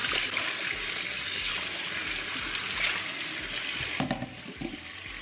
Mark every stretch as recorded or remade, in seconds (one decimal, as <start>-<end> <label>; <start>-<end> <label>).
0.0-5.2 recorded